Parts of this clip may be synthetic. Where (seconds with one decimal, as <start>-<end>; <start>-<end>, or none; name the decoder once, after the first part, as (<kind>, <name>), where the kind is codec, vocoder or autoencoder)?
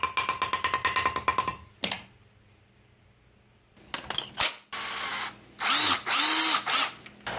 none